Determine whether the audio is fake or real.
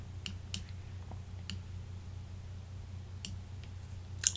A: real